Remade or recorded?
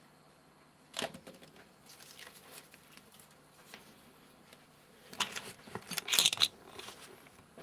recorded